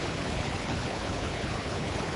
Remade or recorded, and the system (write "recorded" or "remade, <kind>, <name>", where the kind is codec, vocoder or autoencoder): remade, codec, HILCodec